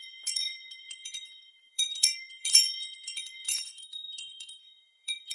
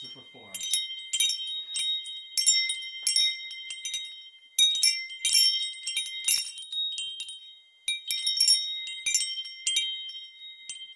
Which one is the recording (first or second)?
second